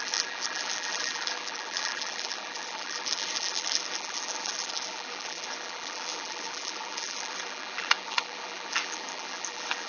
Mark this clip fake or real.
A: fake